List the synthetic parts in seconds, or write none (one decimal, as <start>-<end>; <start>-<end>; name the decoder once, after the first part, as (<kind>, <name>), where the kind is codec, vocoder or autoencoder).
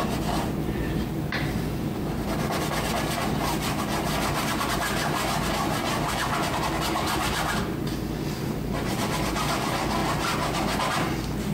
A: none